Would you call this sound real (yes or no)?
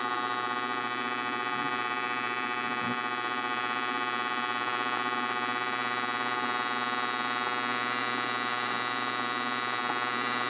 yes